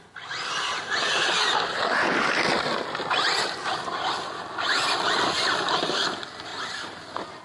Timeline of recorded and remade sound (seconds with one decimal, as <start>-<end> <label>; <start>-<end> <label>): 0.0-7.4 recorded